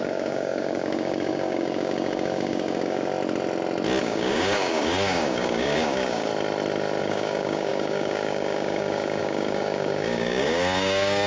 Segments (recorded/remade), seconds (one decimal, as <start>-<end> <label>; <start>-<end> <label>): 0.0-3.1 remade; 3.1-4.0 recorded; 4.0-6.3 remade; 6.3-7.0 recorded; 7.0-11.3 remade